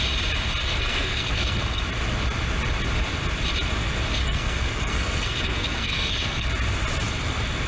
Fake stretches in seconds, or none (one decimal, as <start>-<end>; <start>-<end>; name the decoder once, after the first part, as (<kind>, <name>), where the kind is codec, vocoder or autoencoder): 0.6-1.8 (codec, SNAC); 4.2-6.5